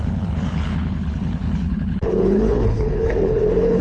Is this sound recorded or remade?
remade